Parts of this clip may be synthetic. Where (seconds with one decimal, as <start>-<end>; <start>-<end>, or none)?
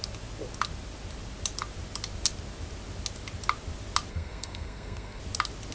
4.1-5.2